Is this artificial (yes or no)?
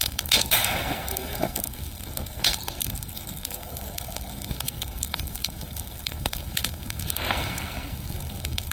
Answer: yes